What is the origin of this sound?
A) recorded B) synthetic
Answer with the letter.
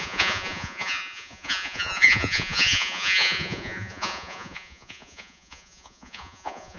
B